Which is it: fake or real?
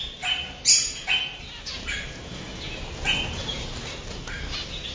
real